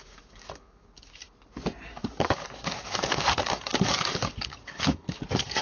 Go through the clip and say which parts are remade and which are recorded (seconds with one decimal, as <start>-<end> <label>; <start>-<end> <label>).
0.0-1.2 remade; 1.2-2.0 recorded; 2.0-5.6 remade